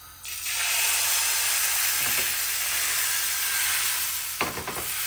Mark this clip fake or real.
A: real